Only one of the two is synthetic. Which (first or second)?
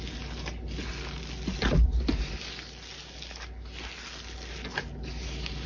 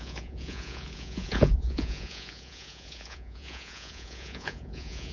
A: second